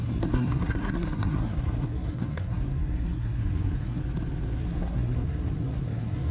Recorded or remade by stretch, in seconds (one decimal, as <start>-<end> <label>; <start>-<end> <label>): 0.0-4.0 remade; 4.0-4.6 recorded; 4.6-6.3 remade

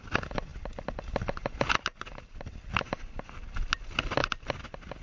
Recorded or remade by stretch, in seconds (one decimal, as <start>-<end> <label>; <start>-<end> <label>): 0.0-5.0 recorded